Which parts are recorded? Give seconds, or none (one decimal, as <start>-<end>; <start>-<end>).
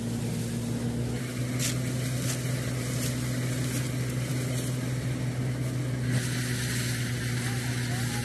0.0-8.2